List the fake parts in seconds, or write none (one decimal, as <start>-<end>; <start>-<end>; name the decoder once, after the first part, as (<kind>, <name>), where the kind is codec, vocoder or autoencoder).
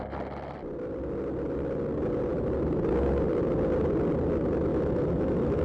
4.7-5.6 (autoencoder, DAC-VAE)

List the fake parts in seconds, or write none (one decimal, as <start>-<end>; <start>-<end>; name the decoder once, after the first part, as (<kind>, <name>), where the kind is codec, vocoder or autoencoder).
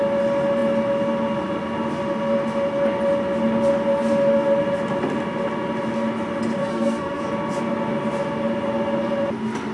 6.6-7.2 (codec, SNAC)